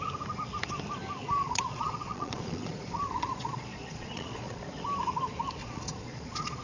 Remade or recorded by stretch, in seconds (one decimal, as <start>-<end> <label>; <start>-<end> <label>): 0.0-1.2 recorded; 1.2-4.6 remade; 4.6-5.6 recorded; 5.6-6.6 remade